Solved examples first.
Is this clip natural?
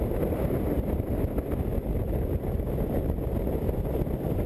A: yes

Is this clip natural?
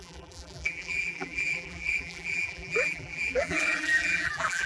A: no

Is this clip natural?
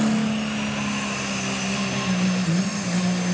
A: yes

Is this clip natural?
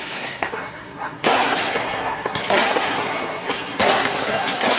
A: no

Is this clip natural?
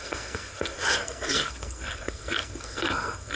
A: no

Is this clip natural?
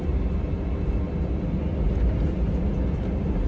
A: yes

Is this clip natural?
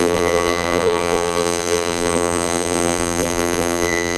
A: no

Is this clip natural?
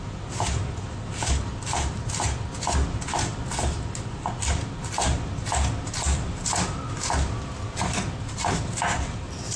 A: yes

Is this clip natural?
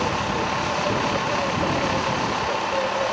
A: yes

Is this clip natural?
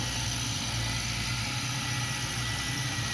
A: yes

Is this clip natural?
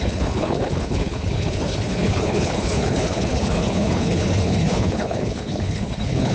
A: no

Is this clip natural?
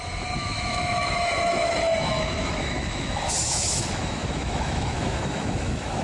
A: no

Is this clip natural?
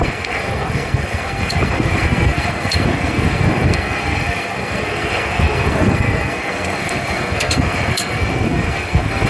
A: no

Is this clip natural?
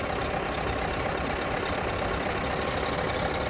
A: yes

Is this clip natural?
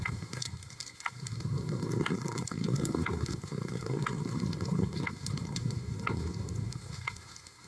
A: no